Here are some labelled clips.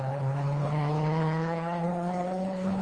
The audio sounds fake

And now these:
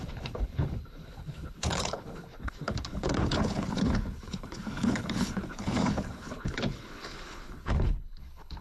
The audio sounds fake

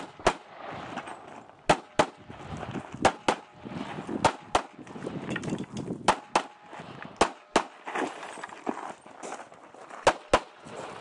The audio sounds real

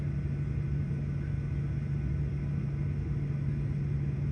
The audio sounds real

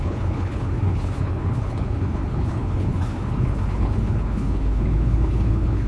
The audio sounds fake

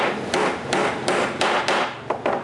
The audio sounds real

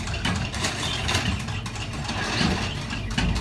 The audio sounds real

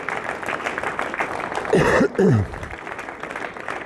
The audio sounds real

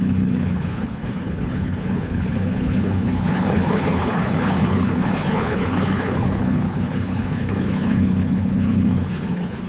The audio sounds fake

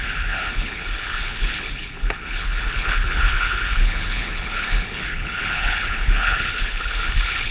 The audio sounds fake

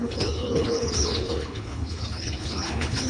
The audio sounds fake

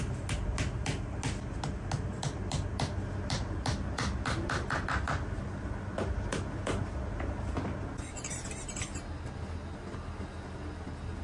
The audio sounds real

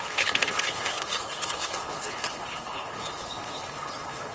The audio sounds fake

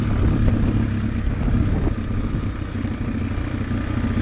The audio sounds real